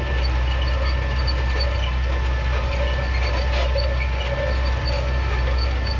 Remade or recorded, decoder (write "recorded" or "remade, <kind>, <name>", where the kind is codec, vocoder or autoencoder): recorded